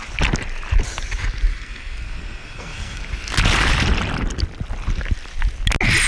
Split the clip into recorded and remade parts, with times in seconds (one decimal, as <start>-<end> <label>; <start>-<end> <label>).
0.0-1.5 recorded; 1.5-3.0 remade; 3.0-6.1 recorded